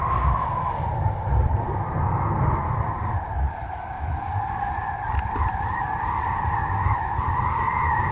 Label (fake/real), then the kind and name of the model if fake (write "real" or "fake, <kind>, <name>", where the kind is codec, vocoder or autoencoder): real